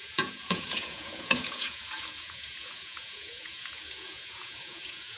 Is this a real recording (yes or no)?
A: no